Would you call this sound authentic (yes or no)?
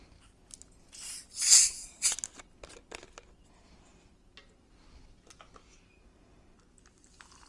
yes